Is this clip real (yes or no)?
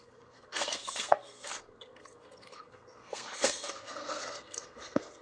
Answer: no